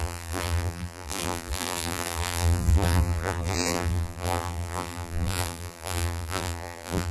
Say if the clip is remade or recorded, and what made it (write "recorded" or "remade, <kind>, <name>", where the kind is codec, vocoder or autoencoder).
remade, vocoder, BigVGAN v2